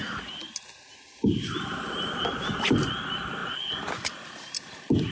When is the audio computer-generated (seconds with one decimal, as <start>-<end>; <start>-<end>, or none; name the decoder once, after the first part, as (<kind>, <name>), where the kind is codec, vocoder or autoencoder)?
none